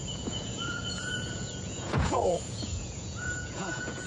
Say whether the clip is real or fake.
fake